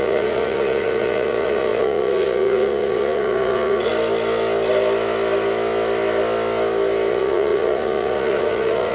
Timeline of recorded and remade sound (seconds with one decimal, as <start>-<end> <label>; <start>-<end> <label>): 0.0-3.9 remade; 3.9-7.1 recorded; 7.1-8.9 remade